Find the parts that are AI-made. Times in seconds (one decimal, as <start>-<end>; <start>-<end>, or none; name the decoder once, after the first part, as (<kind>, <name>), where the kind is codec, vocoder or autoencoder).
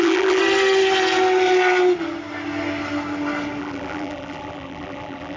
0.0-0.4 (vocoder, BigVGAN v2); 3.6-5.4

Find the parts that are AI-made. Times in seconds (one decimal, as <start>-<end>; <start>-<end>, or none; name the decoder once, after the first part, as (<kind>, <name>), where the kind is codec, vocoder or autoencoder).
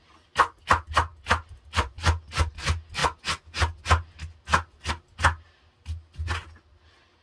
none